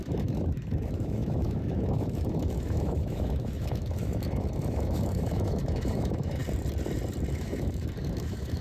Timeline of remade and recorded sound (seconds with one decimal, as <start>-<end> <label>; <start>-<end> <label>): 0.0-6.4 remade; 6.4-7.3 recorded; 7.3-8.6 remade

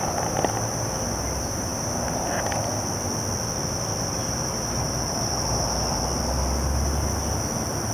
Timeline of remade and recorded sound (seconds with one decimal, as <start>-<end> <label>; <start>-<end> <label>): 0.0-4.2 recorded; 4.2-6.0 remade; 6.0-7.9 recorded

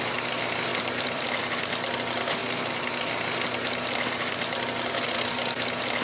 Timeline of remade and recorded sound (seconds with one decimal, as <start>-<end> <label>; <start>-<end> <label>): 0.0-0.7 recorded; 0.7-1.4 remade; 1.4-6.0 recorded

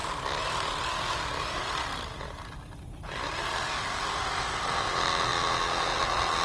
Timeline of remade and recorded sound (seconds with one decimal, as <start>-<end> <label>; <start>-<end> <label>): 0.0-6.4 recorded